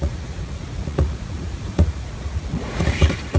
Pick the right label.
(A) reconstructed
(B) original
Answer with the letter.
A